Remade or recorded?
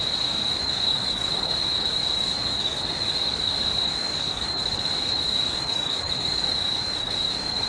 remade